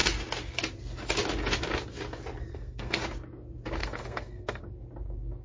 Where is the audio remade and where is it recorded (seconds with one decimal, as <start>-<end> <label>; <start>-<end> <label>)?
0.0-2.5 recorded; 2.5-3.0 remade; 3.0-3.8 recorded; 3.8-4.6 remade; 4.6-5.4 recorded

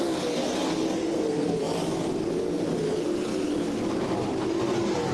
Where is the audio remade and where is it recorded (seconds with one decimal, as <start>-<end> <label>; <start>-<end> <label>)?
0.0-1.0 recorded; 1.0-1.6 remade; 1.6-5.1 recorded

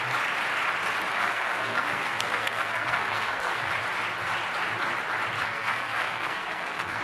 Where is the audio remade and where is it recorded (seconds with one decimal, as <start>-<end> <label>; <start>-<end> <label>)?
0.0-1.1 recorded; 1.1-3.7 remade; 3.7-5.4 recorded; 5.4-7.0 remade

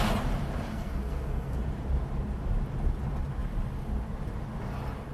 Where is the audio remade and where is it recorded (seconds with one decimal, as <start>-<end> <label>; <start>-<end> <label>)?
0.0-0.7 recorded; 0.7-1.6 remade; 1.6-5.1 recorded

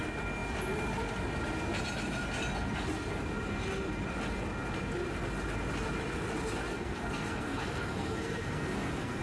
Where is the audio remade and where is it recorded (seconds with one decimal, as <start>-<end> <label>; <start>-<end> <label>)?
0.0-6.7 recorded; 6.7-9.2 remade